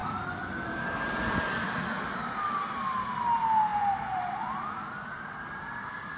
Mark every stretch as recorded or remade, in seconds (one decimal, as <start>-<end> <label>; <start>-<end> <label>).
0.0-2.1 remade; 2.1-3.7 recorded; 3.7-4.2 remade; 4.2-6.2 recorded